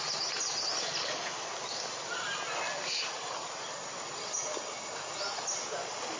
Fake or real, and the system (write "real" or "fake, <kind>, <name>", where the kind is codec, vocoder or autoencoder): real